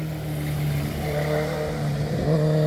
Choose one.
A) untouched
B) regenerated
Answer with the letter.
A